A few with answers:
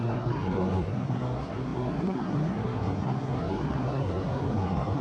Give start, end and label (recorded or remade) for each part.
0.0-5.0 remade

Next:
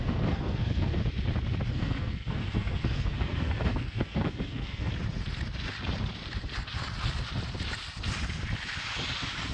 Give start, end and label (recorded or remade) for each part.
0.0-1.0 remade; 1.0-1.7 recorded; 1.7-4.9 remade; 4.9-9.5 recorded